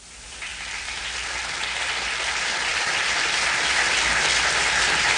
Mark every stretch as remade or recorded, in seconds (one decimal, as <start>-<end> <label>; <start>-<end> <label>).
0.0-2.7 recorded; 2.7-4.0 remade; 4.0-5.2 recorded